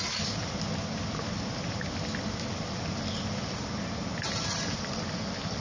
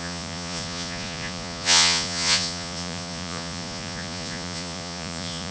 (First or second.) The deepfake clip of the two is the second